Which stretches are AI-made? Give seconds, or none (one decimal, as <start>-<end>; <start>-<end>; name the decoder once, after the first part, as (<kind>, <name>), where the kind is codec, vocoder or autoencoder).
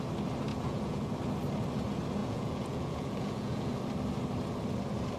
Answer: 0.5-1.1 (vocoder, Vocos); 2.2-3.8